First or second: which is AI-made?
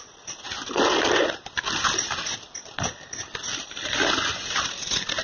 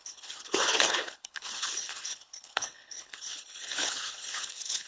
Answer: second